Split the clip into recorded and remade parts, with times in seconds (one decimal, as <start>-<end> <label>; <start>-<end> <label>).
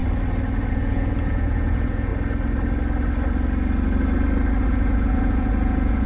0.0-0.7 recorded; 0.7-2.1 remade; 2.1-4.7 recorded; 4.7-6.1 remade